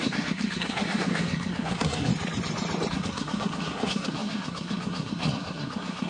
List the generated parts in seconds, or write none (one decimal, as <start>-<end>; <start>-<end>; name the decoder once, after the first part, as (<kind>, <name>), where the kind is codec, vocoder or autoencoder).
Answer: 0.0-2.1 (codec, SNAC); 2.9-6.1